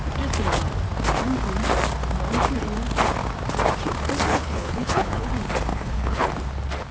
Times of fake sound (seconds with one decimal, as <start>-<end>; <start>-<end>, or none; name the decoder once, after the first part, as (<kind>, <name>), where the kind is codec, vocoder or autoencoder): 4.3-5.3 (codec, HILCodec); 5.7-6.3